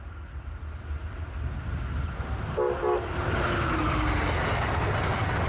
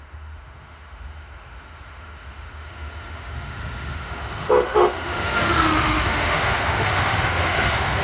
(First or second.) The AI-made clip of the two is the second